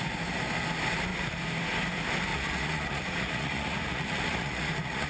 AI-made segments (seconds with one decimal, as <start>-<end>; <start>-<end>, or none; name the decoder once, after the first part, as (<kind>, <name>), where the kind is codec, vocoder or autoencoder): 2.3-5.1 (vocoder, Vocos)